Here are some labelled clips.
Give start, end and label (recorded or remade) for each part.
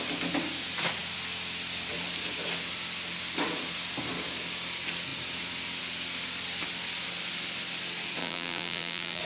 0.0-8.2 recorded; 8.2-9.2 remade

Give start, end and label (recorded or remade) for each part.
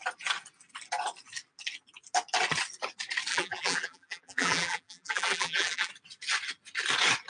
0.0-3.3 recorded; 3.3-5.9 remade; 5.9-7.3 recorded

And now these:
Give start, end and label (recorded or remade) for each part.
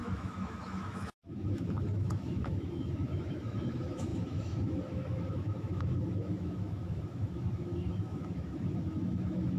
0.0-9.6 remade